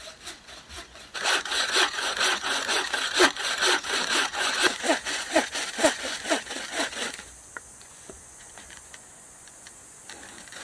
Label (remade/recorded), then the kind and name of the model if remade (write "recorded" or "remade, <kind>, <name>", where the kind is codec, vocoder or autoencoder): remade, vocoder, Vocos